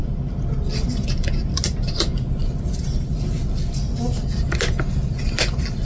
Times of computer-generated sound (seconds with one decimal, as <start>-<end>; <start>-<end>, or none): none